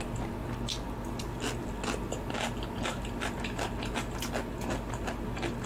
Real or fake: real